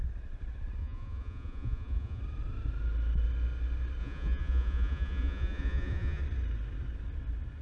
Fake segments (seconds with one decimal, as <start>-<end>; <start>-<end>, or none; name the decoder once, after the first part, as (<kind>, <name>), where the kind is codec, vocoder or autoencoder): 0.8-2.2 (vocoder, Vocos); 4.0-6.2